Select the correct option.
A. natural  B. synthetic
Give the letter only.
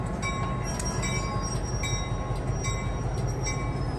A